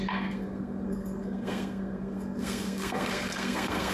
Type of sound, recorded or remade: remade